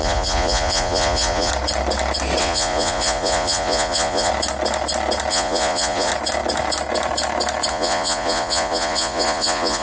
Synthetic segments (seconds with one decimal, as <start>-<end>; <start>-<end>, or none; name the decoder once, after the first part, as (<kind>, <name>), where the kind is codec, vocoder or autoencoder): 0.0-1.5 (vocoder, Vocos); 2.4-4.3; 5.3-6.1; 7.7-9.8